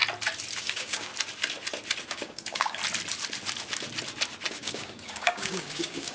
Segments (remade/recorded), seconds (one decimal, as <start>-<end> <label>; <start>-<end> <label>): 0.0-0.6 recorded; 0.6-1.1 remade; 1.1-2.1 recorded; 2.1-2.8 remade; 2.8-4.5 recorded; 4.5-6.1 remade